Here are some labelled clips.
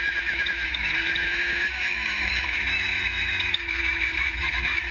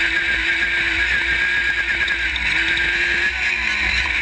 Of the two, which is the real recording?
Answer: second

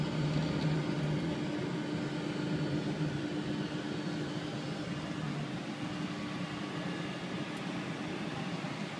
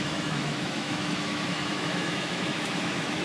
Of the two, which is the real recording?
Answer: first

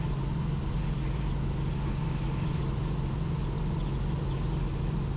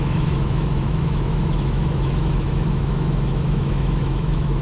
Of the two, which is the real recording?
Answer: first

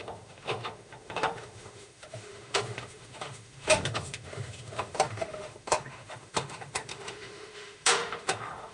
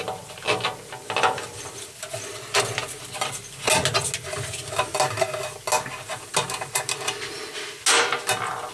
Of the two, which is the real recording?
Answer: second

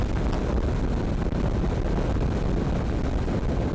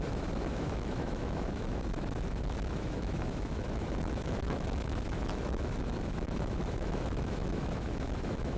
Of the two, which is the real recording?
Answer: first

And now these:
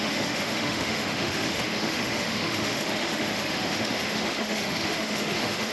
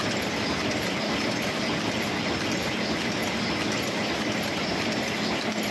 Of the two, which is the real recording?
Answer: second